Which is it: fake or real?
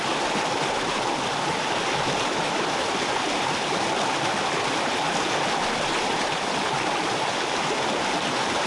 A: fake